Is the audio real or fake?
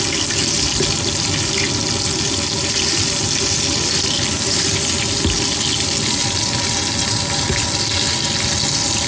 real